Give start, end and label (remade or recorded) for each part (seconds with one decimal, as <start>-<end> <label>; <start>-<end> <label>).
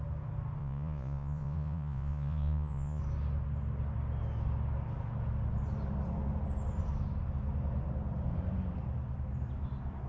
0.0-0.6 recorded; 0.6-3.0 remade; 3.0-10.1 recorded